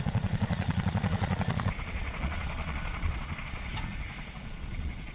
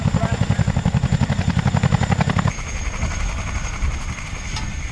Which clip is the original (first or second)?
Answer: second